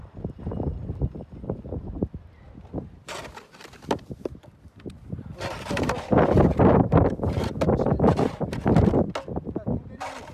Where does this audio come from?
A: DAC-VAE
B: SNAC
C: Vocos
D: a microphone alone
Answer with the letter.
D